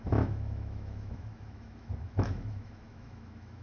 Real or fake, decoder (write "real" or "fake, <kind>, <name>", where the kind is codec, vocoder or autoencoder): fake, autoencoder, DAC-VAE